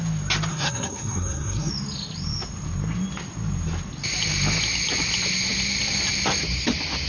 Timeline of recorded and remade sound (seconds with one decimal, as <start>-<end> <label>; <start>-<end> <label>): 0.0-0.5 recorded; 0.5-1.7 remade; 1.7-7.1 recorded